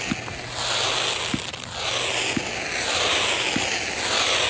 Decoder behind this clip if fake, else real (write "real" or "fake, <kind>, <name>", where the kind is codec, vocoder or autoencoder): real